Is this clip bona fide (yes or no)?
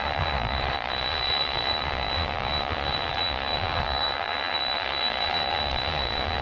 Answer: no